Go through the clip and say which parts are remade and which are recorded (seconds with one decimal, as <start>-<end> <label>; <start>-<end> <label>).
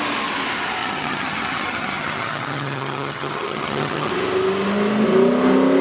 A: 0.0-0.8 recorded; 0.8-4.1 remade; 4.1-5.8 recorded